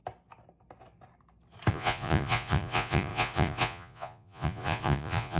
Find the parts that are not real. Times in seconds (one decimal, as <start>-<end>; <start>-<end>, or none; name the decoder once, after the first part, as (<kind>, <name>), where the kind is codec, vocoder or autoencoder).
1.7-5.4 (vocoder, Vocos)